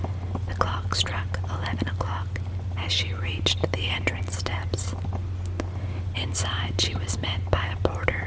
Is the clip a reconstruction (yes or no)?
no